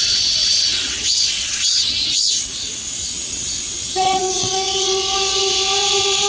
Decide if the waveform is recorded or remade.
remade